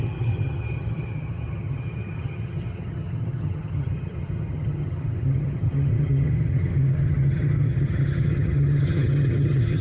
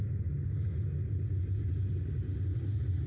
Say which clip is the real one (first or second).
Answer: second